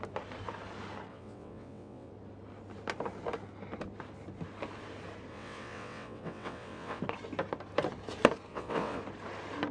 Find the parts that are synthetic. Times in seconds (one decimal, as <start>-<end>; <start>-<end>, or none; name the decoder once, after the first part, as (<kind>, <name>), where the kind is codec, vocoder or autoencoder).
1.1-2.1 (vocoder, WaveNeXt); 5.3-7.0; 8.5-9.0